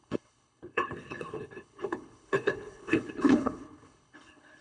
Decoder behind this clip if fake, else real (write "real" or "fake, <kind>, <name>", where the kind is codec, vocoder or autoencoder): fake, codec, HILCodec